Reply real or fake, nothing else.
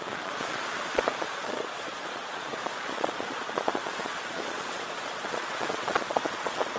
fake